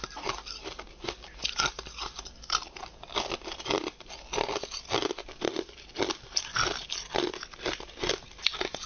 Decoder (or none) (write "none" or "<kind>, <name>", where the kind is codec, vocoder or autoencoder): none